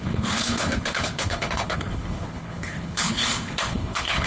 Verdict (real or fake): fake